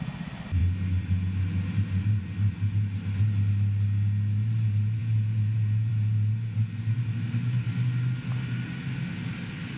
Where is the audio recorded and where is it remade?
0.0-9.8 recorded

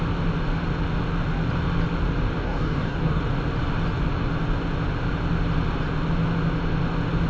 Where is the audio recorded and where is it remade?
0.0-2.4 recorded; 2.4-3.2 remade; 3.2-7.3 recorded